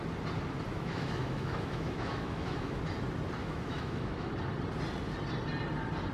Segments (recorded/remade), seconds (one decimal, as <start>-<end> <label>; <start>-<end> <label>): 0.0-0.7 recorded; 0.7-2.8 remade; 2.8-3.4 recorded; 3.4-4.3 remade; 4.3-6.1 recorded